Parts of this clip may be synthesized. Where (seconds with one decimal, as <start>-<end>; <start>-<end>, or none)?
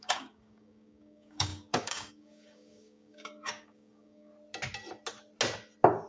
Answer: 0.0-4.3